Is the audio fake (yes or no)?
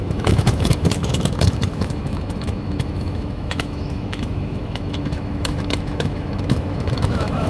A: yes